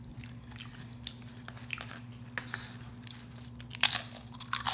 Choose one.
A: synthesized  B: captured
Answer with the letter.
B